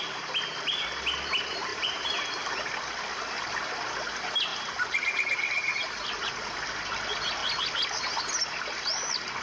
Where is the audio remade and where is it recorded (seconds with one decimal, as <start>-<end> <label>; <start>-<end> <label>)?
0.0-1.7 recorded; 1.7-2.5 remade; 2.5-4.5 recorded; 4.5-6.3 remade; 6.3-9.4 recorded